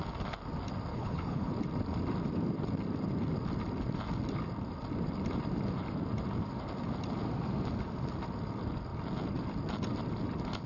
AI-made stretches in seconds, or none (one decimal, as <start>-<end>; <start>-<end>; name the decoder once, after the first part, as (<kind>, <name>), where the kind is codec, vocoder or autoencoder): 0.9-1.5 (codec, HILCodec)